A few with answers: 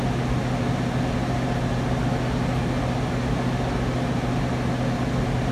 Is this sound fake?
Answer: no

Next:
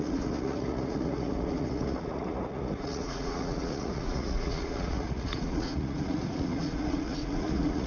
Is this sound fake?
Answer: yes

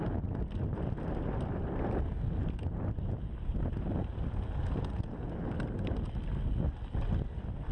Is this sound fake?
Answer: no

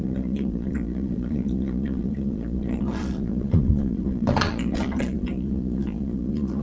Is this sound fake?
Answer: yes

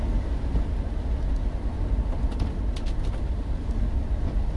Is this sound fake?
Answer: no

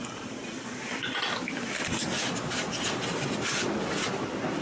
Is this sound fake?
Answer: no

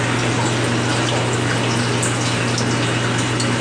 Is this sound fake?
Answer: no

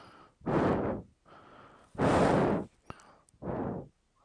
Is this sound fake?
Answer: no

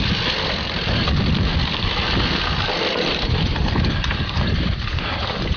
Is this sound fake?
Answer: no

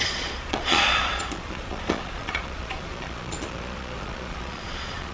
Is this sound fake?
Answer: yes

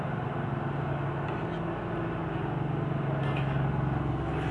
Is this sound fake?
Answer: no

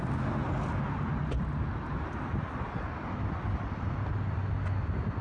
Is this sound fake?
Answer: no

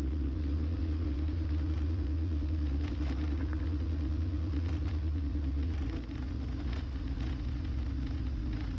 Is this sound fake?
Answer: yes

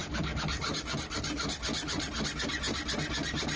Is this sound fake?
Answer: no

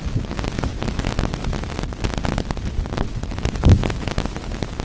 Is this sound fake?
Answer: no